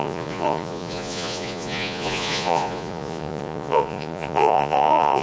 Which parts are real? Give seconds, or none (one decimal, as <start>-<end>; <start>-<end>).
none